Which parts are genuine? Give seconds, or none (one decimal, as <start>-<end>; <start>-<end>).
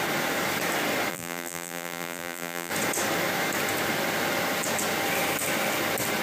0.0-1.1; 2.7-6.2